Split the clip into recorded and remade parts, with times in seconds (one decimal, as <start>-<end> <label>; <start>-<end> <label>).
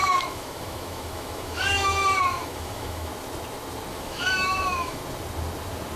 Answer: 0.0-3.1 remade; 3.1-3.9 recorded; 3.9-5.0 remade; 5.0-6.0 recorded